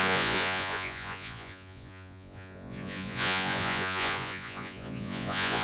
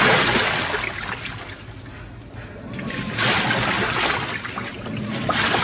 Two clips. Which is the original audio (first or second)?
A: second